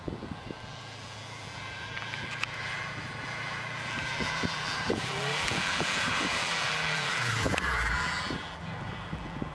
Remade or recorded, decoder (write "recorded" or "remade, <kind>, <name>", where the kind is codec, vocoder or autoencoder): remade, vocoder, BigVGAN v2